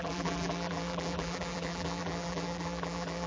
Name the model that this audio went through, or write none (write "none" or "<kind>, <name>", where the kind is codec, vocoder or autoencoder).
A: vocoder, BigVGAN v2